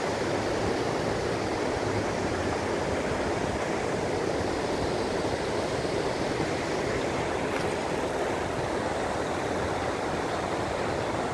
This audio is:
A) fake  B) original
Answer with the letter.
B